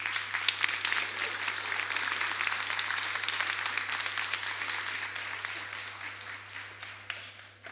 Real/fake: real